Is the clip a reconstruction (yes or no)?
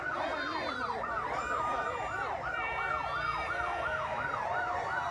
yes